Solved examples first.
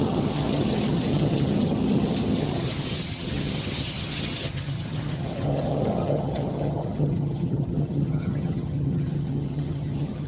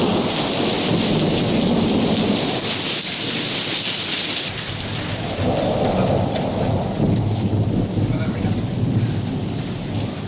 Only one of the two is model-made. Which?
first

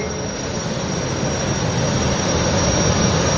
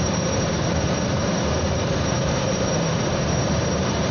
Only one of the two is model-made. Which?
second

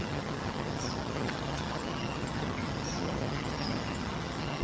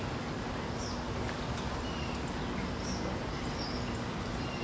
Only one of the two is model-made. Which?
first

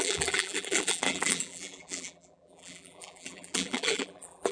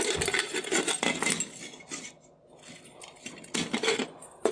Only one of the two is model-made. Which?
first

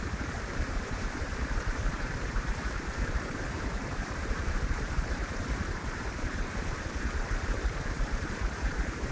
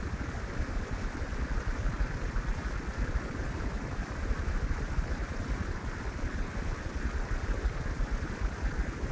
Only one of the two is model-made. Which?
first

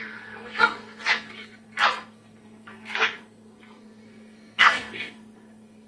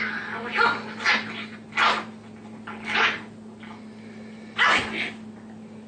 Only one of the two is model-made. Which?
first